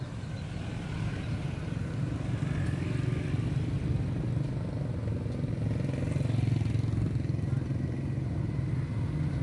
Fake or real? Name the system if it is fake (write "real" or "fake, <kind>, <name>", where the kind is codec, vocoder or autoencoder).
real